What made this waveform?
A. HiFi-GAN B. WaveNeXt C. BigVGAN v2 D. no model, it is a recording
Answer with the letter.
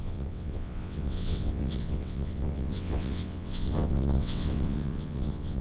B